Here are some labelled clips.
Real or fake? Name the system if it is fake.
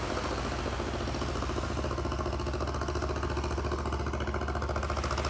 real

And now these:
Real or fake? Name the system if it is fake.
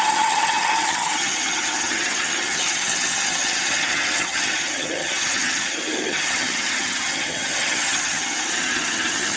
fake, vocoder, HiFi-GAN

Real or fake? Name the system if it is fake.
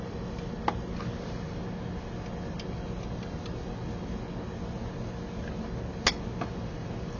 real